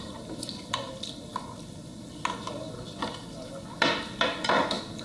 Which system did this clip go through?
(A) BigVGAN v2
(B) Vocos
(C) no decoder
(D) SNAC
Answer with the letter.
C